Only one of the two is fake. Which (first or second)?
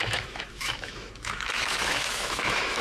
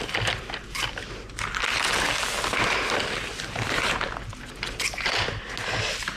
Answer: first